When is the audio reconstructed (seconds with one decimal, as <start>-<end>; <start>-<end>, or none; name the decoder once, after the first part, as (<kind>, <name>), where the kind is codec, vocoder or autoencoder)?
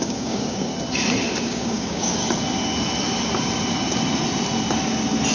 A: 0.0-0.7 (codec, DAC); 1.4-2.2